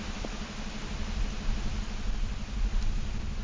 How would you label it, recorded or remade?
recorded